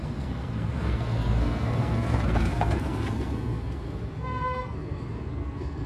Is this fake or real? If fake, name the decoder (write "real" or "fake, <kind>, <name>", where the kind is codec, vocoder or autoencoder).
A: fake, codec, SNAC